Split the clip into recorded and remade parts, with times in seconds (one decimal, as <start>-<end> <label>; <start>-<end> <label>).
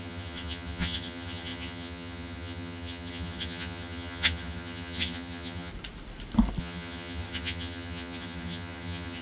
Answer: 0.0-5.7 remade; 5.7-6.6 recorded; 6.6-9.2 remade